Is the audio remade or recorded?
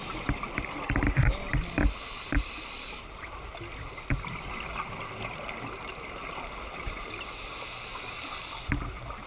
recorded